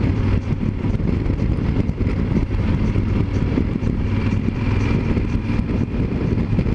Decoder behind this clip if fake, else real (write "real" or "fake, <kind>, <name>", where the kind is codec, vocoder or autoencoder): fake, vocoder, BigVGAN v2